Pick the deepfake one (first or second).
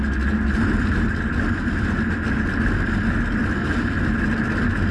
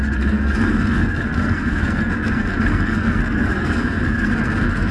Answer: second